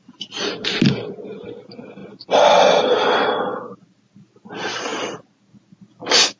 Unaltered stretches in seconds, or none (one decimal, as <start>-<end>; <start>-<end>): 0.0-6.4